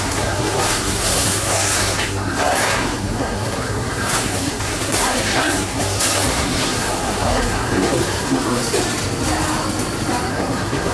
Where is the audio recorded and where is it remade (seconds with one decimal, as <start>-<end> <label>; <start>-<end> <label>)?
0.0-8.6 remade; 8.6-10.3 recorded; 10.3-10.9 remade